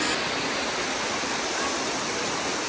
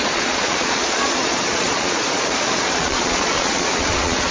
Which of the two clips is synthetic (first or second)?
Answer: second